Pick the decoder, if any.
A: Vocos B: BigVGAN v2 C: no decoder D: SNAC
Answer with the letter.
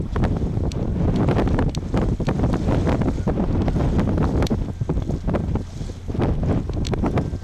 C